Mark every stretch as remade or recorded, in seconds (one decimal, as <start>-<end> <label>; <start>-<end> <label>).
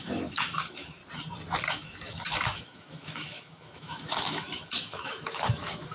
0.0-1.0 remade; 1.0-1.7 recorded; 1.7-5.9 remade